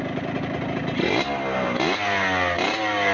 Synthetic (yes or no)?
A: no